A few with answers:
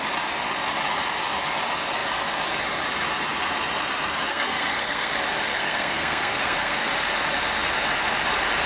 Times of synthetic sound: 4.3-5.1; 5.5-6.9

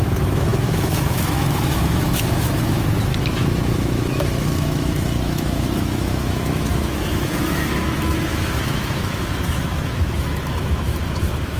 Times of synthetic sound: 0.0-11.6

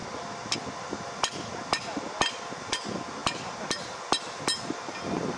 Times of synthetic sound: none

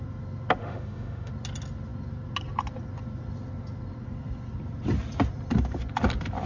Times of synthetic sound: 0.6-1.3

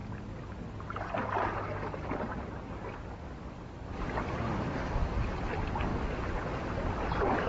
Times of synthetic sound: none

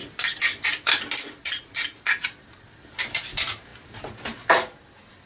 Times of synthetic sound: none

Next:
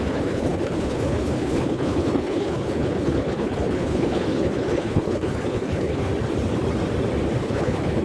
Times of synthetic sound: 0.0-6.1; 7.4-8.0